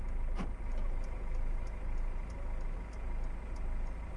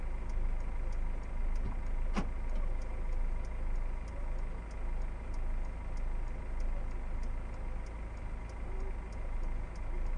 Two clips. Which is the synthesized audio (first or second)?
first